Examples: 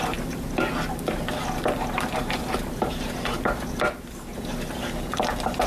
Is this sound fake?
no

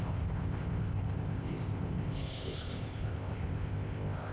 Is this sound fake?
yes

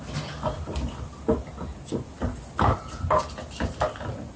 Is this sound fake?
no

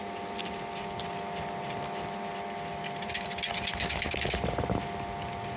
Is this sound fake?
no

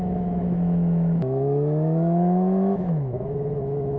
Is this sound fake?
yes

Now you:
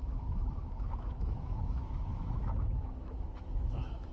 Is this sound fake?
yes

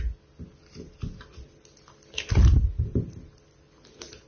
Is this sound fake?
no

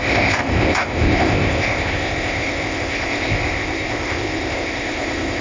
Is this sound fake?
yes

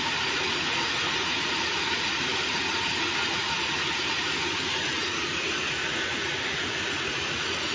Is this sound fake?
yes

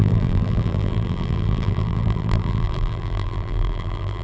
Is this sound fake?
yes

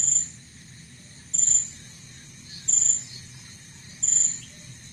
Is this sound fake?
no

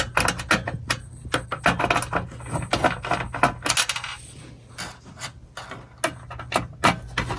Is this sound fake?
no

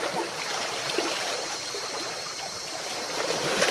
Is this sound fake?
yes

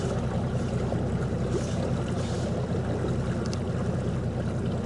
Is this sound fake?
no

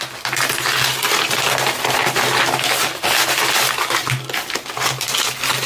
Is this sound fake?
no